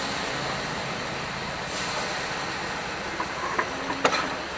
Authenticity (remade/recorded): recorded